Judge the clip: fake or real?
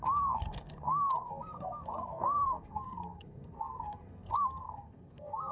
fake